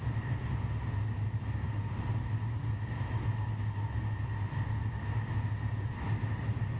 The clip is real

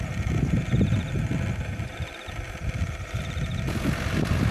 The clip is real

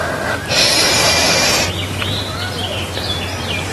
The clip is real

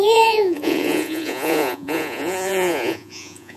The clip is fake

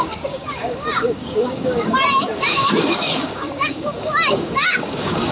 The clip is fake